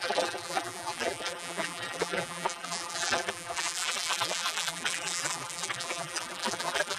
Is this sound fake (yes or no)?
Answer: yes